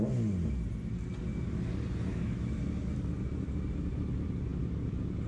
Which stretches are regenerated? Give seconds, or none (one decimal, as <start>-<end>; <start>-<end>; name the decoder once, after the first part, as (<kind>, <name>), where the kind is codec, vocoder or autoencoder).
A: 2.1-2.8 (autoencoder, DAC-VAE)